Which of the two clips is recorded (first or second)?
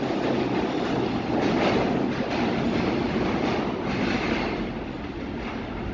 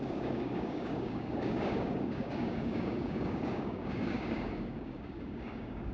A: first